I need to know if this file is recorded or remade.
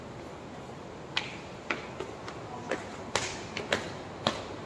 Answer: recorded